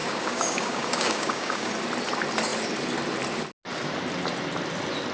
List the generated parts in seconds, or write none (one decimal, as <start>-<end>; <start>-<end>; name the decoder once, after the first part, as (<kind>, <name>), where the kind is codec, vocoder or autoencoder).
0.0-1.7 (codec, DAC)

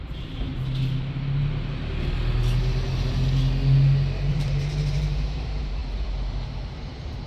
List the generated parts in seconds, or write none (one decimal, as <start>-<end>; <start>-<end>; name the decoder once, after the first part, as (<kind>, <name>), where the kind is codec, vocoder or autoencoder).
0.0-0.5 (vocoder, BigVGAN v2); 4.3-7.3

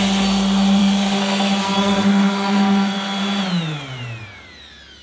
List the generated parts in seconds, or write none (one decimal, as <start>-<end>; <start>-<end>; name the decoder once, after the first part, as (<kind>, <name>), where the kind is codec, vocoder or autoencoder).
0.8-3.2 (codec, SNAC)

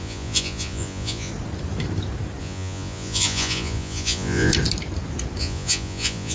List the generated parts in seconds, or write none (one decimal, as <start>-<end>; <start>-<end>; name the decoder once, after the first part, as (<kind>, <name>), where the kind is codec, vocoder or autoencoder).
0.0-1.3 (vocoder, Vocos); 2.4-4.5; 5.4-6.3

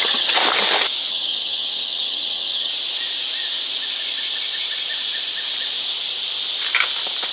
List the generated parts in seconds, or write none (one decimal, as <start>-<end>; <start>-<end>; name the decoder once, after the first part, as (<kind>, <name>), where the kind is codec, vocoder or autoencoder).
0.0-0.4 (vocoder, HiFi-GAN); 1.1-2.7

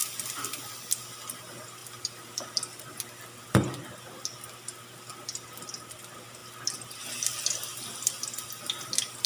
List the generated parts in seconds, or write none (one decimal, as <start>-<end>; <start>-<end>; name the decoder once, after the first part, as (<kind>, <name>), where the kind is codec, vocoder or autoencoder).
0.0-0.9 (vocoder, BigVGAN v2); 1.8-2.8

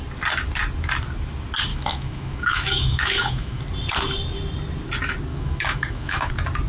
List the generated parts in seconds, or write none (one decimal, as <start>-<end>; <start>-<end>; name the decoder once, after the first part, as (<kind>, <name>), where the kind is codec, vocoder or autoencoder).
1.7-3.6 (autoencoder, DAC-VAE); 5.3-6.3